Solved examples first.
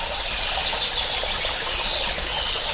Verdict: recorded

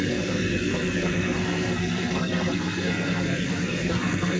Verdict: remade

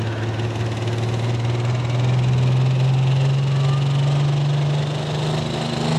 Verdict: recorded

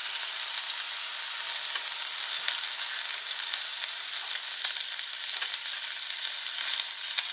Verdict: recorded